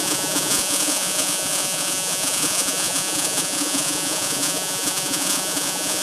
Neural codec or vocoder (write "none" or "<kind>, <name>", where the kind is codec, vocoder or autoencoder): vocoder, Vocos